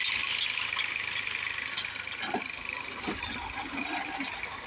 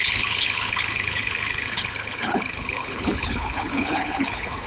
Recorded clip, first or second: first